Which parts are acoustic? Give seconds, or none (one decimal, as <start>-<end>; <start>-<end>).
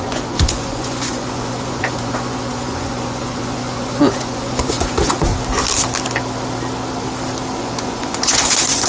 5.3-7.6